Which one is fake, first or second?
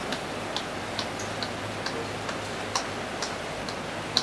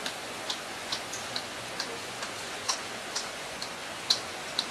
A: second